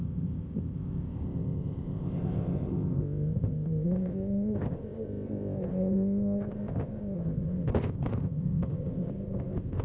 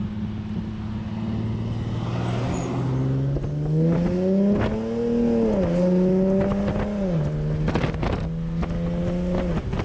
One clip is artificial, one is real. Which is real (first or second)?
second